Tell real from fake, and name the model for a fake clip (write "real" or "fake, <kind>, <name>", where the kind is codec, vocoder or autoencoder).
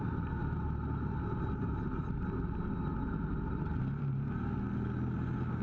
real